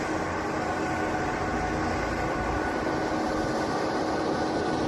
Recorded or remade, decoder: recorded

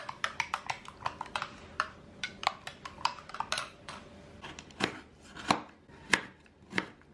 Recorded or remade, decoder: recorded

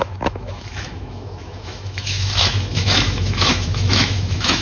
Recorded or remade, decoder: remade, autoencoder, DAC-VAE